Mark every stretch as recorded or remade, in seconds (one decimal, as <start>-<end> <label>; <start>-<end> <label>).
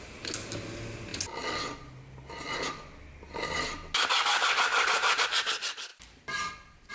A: 0.0-5.9 recorded; 5.9-6.9 remade